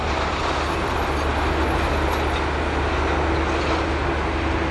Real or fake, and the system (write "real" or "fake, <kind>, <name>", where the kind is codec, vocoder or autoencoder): real